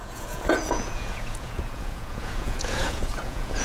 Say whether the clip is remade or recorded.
remade